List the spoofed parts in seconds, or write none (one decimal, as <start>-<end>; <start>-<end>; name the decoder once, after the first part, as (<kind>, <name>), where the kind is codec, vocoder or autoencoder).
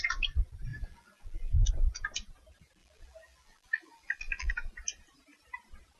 0.7-1.7 (vocoder, BigVGAN v2); 2.8-4.5